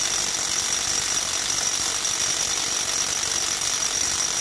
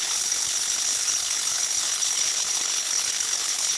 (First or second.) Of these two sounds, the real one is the first